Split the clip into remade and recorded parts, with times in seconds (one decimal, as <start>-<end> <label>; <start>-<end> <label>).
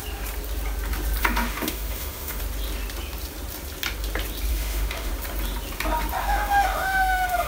0.0-1.2 recorded; 1.2-2.4 remade; 2.4-4.5 recorded; 4.5-5.1 remade; 5.1-6.2 recorded; 6.2-7.5 remade